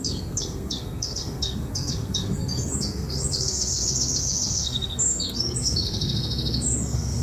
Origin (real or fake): fake